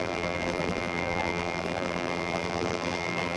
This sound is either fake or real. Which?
fake